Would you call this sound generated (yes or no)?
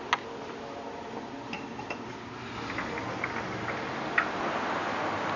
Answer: no